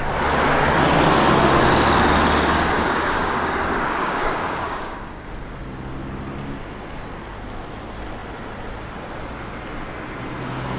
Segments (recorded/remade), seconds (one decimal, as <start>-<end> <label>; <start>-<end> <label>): 0.0-2.5 recorded; 2.5-5.3 remade; 5.3-10.8 recorded